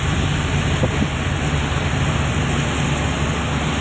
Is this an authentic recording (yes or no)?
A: yes